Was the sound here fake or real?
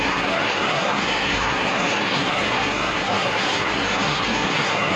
fake